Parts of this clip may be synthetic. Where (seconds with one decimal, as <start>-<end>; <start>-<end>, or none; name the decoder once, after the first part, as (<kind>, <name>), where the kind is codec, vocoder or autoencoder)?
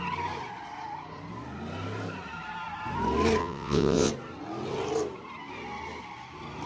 3.4-4.1 (vocoder, WaveNeXt)